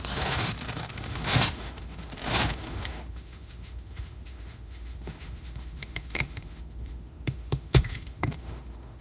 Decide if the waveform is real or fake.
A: fake